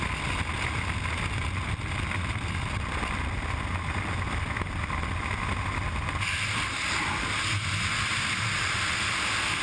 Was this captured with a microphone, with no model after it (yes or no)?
yes